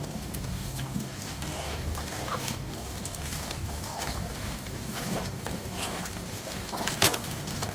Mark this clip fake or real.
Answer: fake